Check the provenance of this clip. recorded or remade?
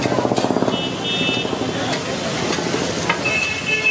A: recorded